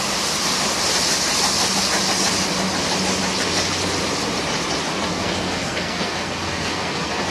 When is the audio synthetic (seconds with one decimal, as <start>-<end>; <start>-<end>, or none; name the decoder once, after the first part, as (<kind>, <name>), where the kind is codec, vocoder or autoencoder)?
5.1-7.3 (codec, SNAC)